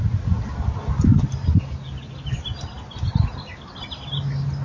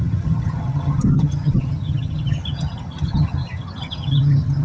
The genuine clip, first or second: first